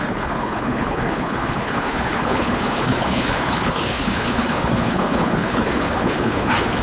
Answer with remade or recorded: remade